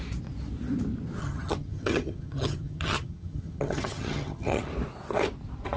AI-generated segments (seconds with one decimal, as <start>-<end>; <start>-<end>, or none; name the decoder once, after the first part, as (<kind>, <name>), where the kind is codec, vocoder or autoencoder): 1.2-4.7 (vocoder, HiFi-GAN)